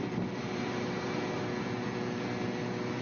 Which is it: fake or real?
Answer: real